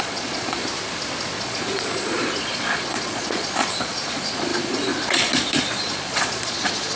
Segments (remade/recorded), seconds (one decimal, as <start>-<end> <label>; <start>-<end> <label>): 0.0-0.6 remade; 0.6-1.4 recorded; 1.4-7.0 remade